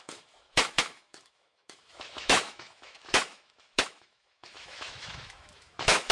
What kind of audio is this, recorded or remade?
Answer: remade